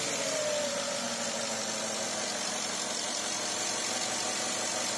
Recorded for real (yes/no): yes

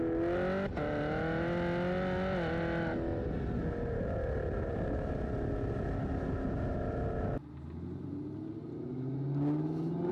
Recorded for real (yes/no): yes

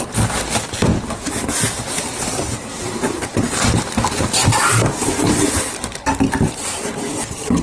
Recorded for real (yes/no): yes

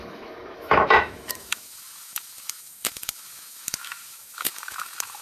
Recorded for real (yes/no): no